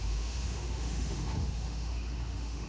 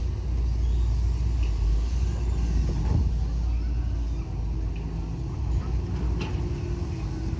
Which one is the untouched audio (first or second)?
second